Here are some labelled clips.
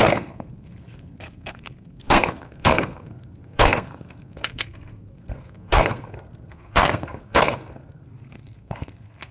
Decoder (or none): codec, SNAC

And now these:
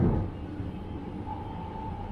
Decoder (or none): none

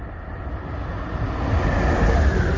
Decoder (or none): none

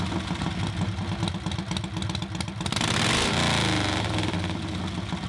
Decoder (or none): none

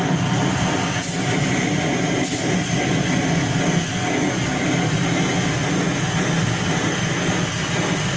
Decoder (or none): none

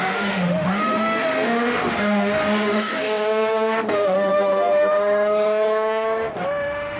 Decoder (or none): autoencoder, DAC-VAE